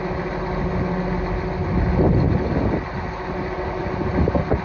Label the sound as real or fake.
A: real